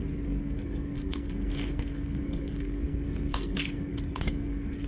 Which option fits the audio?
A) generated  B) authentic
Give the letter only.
A